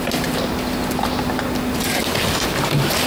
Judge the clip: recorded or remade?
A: recorded